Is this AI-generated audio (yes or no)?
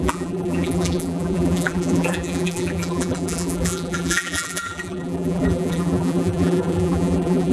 yes